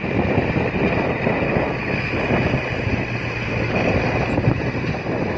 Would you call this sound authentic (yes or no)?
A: yes